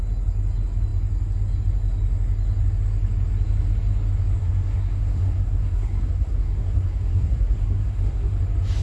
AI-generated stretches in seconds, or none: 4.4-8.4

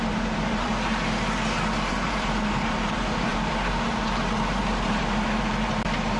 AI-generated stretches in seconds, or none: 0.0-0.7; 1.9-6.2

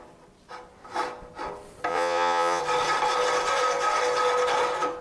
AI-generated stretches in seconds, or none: 1.9-2.6